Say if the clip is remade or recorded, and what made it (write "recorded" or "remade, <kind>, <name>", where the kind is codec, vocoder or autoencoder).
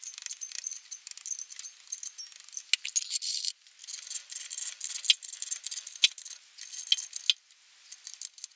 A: recorded